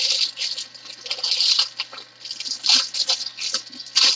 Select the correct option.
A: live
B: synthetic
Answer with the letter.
A